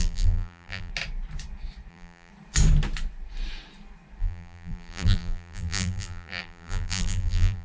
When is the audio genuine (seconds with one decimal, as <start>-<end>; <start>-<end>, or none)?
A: 0.9-1.9; 2.3-4.2